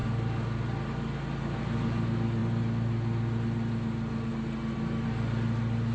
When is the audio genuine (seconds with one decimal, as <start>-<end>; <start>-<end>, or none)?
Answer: 0.0-5.9